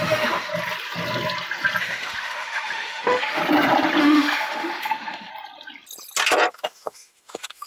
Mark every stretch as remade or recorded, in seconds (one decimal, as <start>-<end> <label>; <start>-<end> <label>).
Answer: 0.0-0.5 remade; 0.5-1.8 recorded; 1.8-3.4 remade; 3.4-4.0 recorded; 4.0-5.3 remade; 5.3-6.5 recorded; 6.5-7.7 remade